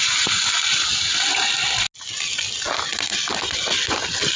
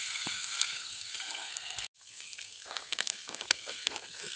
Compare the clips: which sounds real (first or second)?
first